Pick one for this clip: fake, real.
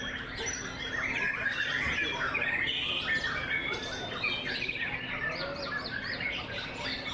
real